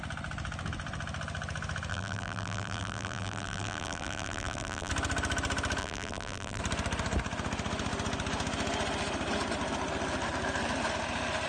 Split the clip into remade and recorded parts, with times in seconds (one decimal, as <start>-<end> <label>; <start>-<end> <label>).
0.0-1.9 recorded; 1.9-4.9 remade; 4.9-5.8 recorded; 5.8-6.6 remade; 6.6-11.5 recorded